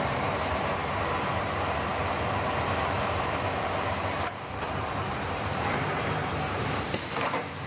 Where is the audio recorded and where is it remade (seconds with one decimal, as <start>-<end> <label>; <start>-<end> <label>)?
0.0-7.7 remade